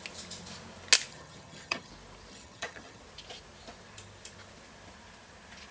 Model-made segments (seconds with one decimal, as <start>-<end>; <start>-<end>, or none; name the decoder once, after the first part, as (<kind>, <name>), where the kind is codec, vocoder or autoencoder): 1.1-1.9 (vocoder, HiFi-GAN); 2.3-3.0